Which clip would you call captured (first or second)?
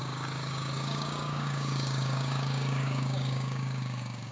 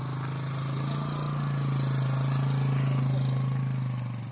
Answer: second